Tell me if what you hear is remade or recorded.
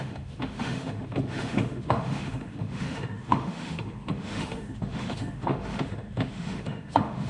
remade